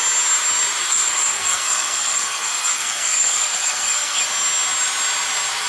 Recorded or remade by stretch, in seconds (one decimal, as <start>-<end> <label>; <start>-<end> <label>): 0.0-0.8 recorded; 0.8-4.2 remade; 4.2-5.7 recorded